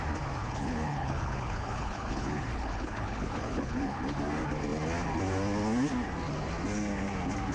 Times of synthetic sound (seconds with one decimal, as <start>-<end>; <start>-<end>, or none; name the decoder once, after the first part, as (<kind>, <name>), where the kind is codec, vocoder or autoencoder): 0.4-4.0 (codec, HILCodec)